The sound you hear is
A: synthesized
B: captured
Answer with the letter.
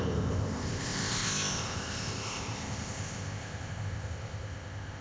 A